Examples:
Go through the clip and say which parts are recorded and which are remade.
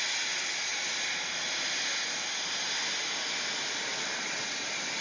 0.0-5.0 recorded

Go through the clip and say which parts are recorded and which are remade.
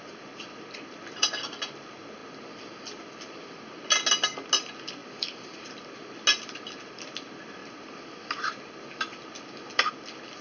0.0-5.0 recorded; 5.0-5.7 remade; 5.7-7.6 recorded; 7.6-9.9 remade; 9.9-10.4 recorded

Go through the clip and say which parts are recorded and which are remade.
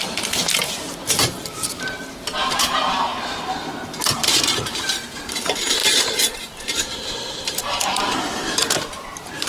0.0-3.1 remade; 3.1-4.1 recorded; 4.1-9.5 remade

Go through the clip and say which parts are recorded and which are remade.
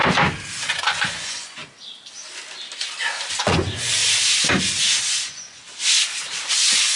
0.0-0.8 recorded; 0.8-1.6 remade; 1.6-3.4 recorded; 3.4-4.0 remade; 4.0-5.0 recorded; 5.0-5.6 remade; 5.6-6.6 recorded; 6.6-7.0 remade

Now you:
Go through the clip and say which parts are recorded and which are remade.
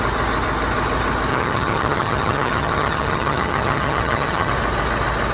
0.0-1.3 recorded; 1.3-4.5 remade; 4.5-5.3 recorded